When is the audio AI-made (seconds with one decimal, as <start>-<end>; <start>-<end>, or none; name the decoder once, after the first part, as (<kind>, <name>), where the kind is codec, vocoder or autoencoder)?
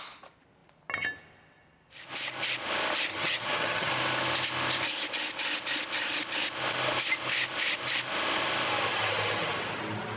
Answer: 3.1-3.9 (vocoder, HiFi-GAN)